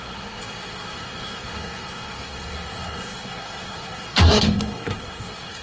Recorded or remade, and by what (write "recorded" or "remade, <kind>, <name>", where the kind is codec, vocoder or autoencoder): remade, codec, SNAC